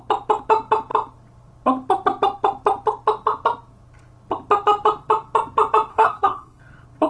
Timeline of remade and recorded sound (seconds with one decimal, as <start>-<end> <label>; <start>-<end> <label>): 0.0-5.9 recorded; 5.9-6.6 remade; 6.6-7.1 recorded

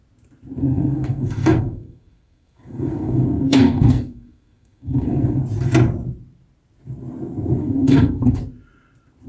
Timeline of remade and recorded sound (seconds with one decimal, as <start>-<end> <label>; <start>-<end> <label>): 0.0-0.6 recorded; 0.6-5.4 remade; 5.4-7.6 recorded; 7.6-8.4 remade; 8.4-9.3 recorded